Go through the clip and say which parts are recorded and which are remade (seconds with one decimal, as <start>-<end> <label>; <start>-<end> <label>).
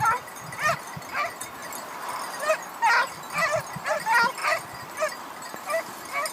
0.0-6.3 recorded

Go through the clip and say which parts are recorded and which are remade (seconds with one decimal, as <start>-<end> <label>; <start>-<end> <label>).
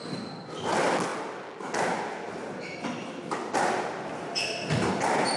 0.0-5.4 recorded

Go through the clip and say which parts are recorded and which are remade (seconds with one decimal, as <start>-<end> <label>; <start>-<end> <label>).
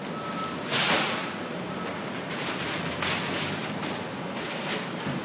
0.0-0.7 recorded; 0.7-1.4 remade; 1.4-5.2 recorded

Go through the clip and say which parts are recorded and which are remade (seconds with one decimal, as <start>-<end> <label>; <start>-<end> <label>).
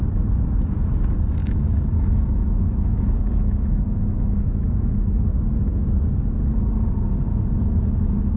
0.0-1.4 recorded; 1.4-4.9 remade; 4.9-8.4 recorded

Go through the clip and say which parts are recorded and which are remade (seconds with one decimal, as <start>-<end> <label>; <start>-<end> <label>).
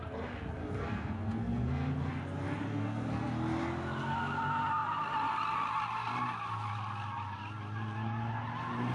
0.0-0.6 recorded; 0.6-1.9 remade; 1.9-2.7 recorded; 2.7-3.3 remade; 3.3-8.9 recorded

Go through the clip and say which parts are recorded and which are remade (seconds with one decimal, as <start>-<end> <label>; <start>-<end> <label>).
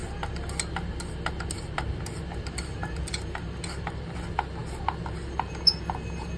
0.0-6.4 recorded